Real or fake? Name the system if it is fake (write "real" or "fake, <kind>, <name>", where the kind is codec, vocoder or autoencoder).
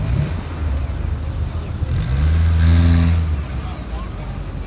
real